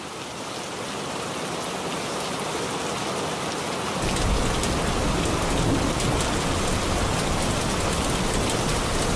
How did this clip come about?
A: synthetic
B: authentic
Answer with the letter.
B